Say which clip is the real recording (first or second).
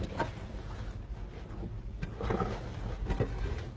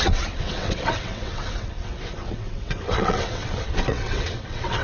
first